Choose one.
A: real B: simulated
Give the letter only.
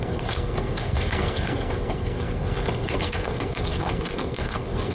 B